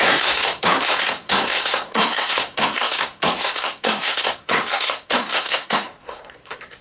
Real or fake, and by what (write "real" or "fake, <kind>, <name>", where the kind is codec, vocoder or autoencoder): fake, codec, SNAC